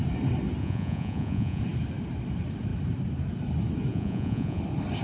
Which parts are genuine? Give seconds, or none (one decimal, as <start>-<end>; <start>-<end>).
0.0-0.6; 1.6-3.9; 4.6-5.0